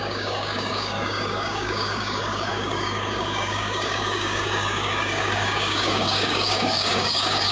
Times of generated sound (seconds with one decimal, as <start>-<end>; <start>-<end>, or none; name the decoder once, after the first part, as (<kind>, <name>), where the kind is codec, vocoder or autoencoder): 0.0-7.5 (codec, DAC)